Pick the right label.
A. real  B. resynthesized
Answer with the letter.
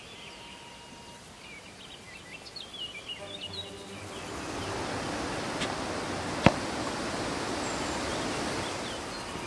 A